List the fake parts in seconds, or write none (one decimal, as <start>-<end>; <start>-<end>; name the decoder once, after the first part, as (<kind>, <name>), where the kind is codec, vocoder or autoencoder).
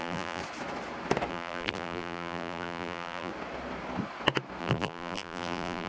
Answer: 0.0-0.4 (vocoder, BigVGAN v2); 1.3-3.3; 4.6-5.9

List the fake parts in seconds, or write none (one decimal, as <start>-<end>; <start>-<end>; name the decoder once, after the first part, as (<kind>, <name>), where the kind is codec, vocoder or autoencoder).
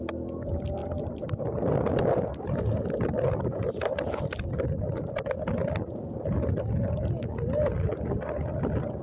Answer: none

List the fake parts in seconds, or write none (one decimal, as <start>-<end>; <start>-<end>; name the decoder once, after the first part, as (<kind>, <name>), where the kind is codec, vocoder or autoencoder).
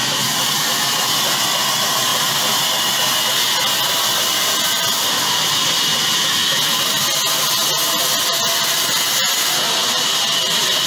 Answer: 9.8-10.9 (vocoder, BigVGAN v2)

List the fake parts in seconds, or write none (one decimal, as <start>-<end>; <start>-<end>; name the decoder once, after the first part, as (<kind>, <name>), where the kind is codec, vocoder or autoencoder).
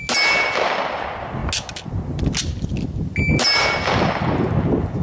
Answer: none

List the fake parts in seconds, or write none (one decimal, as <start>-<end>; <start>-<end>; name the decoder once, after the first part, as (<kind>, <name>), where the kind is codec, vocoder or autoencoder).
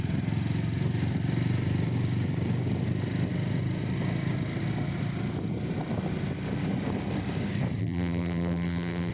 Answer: 7.8-9.1 (vocoder, BigVGAN v2)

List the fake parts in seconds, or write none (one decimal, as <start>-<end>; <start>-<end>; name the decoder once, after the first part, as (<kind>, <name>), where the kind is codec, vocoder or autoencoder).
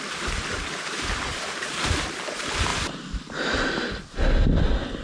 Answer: none